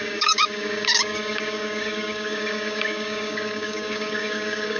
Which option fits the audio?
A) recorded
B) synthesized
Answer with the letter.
B